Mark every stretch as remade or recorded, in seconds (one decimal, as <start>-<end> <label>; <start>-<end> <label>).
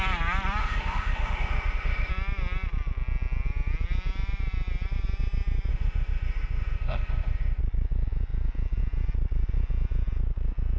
0.0-0.6 recorded; 0.6-2.1 remade; 2.1-5.7 recorded; 5.7-7.6 remade; 7.6-10.8 recorded